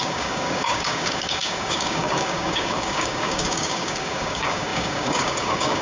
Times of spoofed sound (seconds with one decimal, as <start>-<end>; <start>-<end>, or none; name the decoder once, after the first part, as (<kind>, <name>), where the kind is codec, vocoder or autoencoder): 0.0-5.8 (codec, DAC)